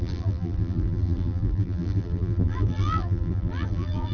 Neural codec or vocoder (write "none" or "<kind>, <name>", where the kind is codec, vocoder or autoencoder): vocoder, BigVGAN v2